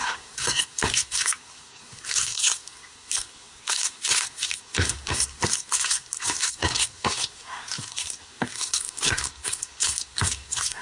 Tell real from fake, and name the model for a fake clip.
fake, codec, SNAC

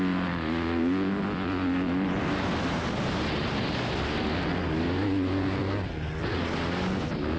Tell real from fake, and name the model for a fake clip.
real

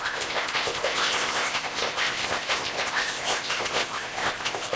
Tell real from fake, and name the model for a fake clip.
fake, codec, ZipCodec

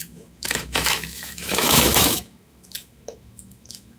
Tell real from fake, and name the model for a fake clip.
fake, autoencoder, DAC-VAE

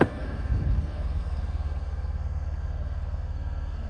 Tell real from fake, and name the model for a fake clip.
fake, codec, SNAC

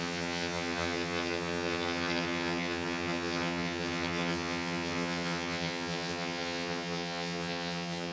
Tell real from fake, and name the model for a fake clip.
fake, vocoder, HiFi-GAN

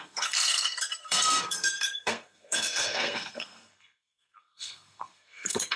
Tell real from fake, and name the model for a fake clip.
fake, codec, SNAC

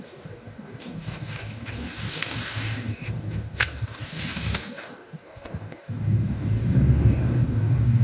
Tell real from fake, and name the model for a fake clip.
fake, codec, DAC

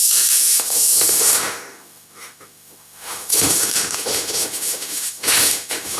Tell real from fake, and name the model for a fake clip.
fake, autoencoder, DAC-VAE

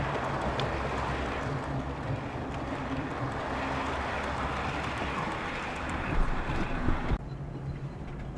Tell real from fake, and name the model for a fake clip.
real